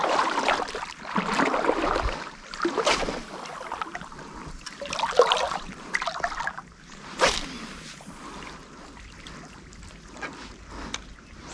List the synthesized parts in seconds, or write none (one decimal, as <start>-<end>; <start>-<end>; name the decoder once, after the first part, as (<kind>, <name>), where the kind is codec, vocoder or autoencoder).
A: 0.0-0.7 (vocoder, BigVGAN v2); 3.9-7.6; 8.6-11.5